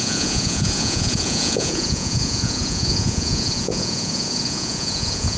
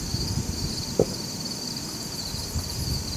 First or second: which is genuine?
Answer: second